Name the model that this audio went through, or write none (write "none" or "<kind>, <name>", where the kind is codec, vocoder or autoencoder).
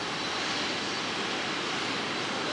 vocoder, BigVGAN v2